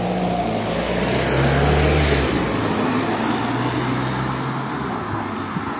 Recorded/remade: recorded